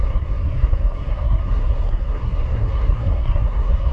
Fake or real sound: fake